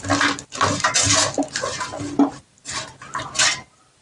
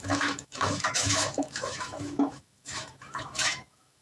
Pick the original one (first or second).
first